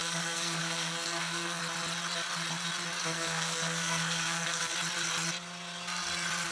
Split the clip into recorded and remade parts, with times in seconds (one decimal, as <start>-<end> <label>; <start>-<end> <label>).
0.0-1.6 remade; 1.6-3.0 recorded; 3.0-4.7 remade; 4.7-6.5 recorded